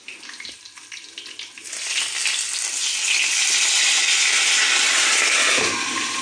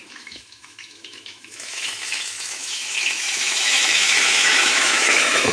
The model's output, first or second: second